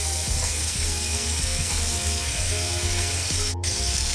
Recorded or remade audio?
remade